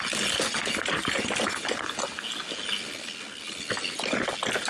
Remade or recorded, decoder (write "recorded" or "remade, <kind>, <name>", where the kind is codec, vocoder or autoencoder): recorded